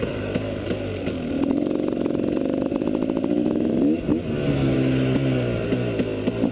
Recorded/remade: recorded